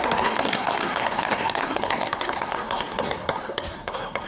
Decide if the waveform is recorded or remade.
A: remade